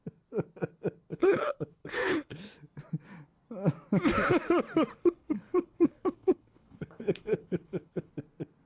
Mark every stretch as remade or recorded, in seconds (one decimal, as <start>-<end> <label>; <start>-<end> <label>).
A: 0.0-1.1 recorded; 1.1-2.5 remade; 2.5-4.9 recorded; 4.9-8.1 remade; 8.1-8.7 recorded